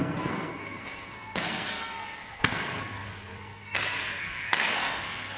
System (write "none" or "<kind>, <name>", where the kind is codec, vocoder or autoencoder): codec, SNAC